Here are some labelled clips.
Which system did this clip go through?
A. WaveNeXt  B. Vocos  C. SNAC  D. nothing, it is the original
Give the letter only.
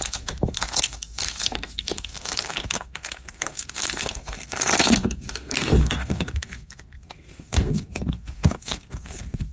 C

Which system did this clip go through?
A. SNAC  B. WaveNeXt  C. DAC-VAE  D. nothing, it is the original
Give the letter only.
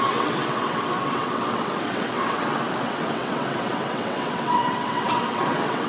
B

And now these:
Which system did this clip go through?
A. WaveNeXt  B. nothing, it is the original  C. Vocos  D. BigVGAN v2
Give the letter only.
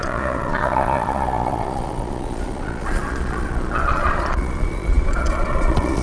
C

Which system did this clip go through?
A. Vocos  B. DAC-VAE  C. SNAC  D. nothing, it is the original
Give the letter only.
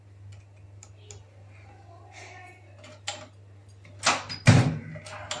D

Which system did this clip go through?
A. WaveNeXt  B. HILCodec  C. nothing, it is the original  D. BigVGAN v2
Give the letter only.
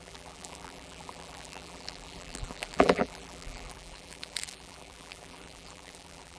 D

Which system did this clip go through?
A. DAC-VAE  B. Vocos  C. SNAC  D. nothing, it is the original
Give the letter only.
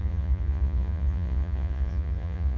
B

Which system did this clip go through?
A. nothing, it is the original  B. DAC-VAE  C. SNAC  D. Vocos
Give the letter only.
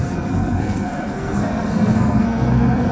C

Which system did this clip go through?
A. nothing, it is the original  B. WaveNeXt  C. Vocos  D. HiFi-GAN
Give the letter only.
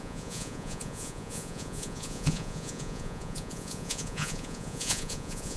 C